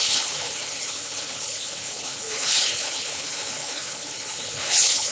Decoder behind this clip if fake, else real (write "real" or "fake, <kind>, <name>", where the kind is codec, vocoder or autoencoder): fake, codec, HILCodec